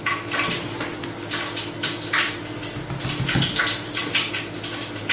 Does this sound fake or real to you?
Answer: real